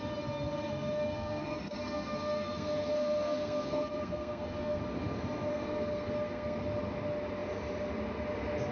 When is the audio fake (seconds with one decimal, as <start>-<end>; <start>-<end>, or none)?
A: 0.7-4.8; 5.5-6.6